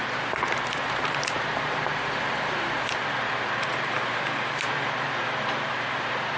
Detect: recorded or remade remade